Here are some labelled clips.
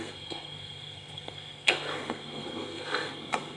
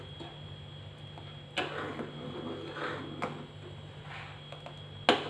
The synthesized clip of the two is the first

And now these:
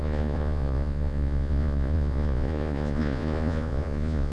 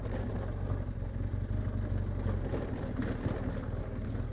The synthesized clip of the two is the first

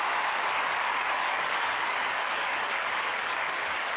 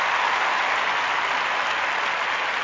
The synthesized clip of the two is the first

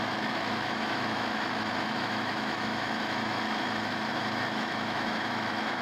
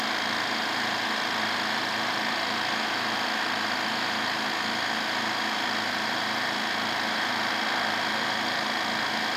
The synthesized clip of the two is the first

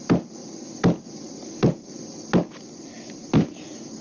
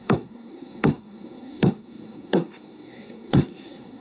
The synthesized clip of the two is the second